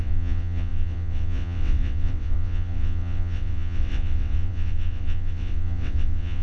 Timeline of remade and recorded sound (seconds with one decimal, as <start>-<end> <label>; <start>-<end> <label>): 0.0-6.4 remade